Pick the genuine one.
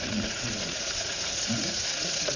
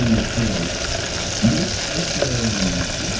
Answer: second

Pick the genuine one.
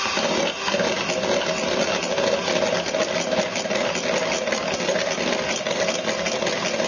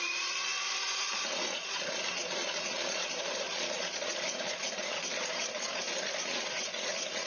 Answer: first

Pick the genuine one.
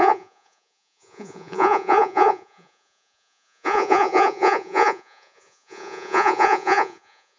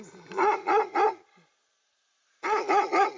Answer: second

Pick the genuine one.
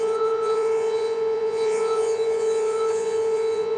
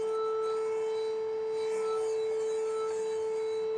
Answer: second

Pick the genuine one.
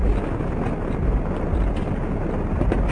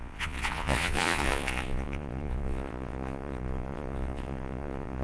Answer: first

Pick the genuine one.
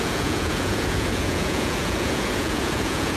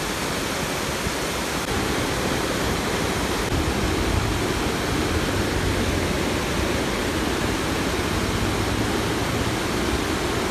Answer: second